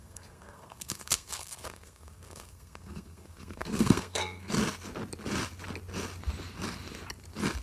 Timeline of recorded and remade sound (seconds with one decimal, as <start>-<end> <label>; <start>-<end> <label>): 0.0-4.5 remade; 4.5-7.6 recorded